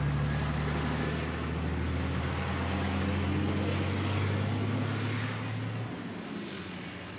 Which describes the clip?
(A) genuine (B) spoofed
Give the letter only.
A